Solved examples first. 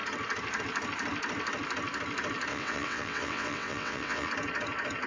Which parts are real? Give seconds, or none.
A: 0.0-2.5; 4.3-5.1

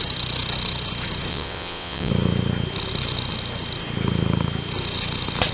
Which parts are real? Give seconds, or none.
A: 0.0-1.3; 2.1-5.5

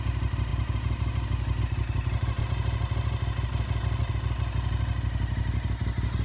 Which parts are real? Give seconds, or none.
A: 0.0-6.2

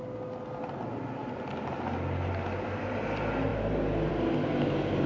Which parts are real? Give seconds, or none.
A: 0.0-5.1

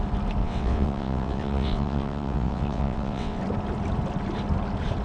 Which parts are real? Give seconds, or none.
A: 0.0-0.4; 3.4-5.0

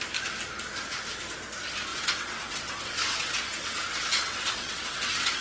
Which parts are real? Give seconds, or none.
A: 0.0-1.9

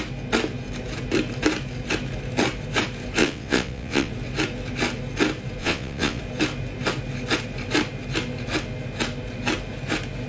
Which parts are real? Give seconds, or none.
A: 0.0-3.2; 4.1-5.6; 6.2-10.3

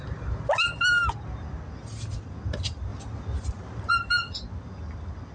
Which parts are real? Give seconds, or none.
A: 0.0-5.3